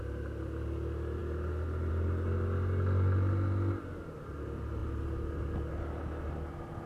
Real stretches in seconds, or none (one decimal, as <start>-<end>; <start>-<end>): 0.0-6.9